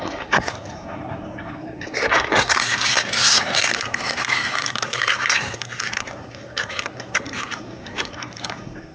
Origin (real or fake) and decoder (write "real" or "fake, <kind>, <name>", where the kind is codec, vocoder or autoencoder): fake, codec, SNAC